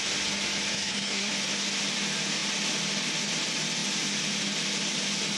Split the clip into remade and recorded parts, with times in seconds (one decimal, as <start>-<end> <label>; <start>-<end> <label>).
0.0-0.7 recorded; 0.7-1.3 remade; 1.3-5.4 recorded